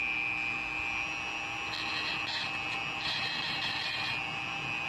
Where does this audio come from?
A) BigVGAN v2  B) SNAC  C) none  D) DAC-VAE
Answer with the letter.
C